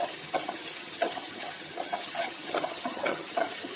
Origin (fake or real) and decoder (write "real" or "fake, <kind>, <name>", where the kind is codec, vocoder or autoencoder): fake, vocoder, HiFi-GAN